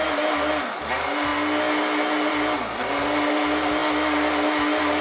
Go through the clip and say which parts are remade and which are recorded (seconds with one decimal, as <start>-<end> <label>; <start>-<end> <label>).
0.0-5.0 recorded